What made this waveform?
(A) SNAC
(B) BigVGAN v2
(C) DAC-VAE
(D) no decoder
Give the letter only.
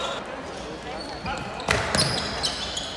D